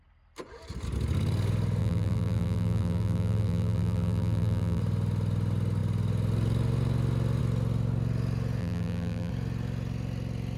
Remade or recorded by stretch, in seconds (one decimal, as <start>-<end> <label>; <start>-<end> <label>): 0.0-1.8 recorded; 1.8-4.8 remade; 4.8-8.6 recorded; 8.6-9.3 remade; 9.3-10.6 recorded